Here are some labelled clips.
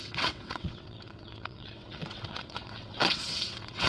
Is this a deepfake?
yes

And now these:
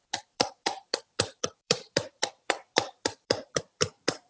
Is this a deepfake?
yes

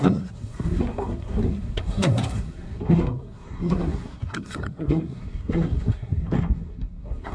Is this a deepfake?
yes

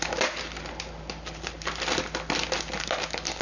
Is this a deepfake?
no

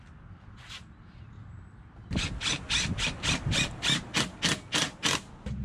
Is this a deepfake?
no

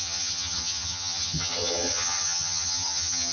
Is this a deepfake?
yes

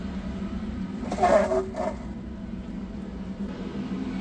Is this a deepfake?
no